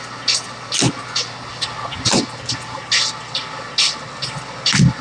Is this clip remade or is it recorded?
recorded